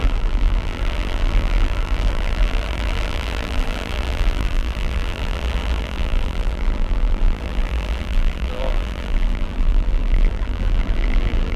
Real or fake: fake